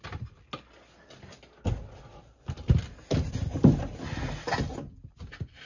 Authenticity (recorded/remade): recorded